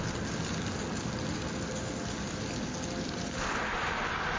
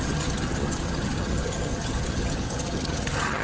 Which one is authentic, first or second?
first